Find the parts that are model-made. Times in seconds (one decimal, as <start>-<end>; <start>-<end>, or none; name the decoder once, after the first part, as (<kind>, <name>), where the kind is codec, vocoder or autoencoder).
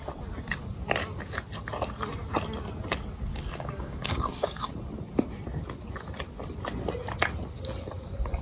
3.3-4.7 (codec, DAC)